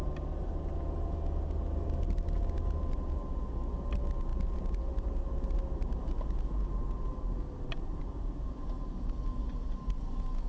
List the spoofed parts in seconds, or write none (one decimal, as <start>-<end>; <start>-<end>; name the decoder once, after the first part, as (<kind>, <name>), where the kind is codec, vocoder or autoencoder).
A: none